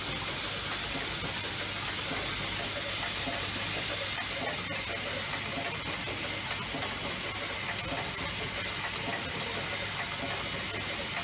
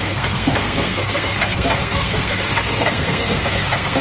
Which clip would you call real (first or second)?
first